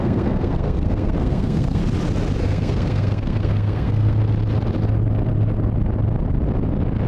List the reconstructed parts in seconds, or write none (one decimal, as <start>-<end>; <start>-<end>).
0.0-1.8; 2.4-4.2